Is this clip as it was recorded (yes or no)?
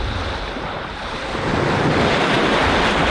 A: yes